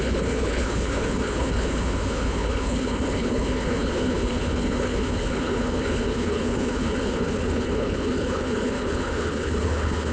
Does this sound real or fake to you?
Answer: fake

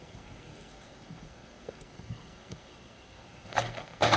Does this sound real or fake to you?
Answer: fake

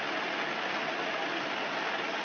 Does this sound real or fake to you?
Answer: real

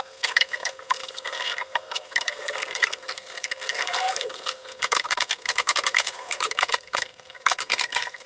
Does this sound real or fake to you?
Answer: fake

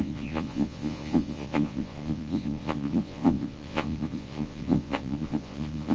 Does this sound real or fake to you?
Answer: fake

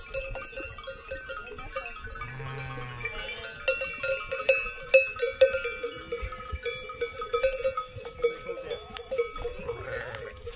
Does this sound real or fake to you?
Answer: real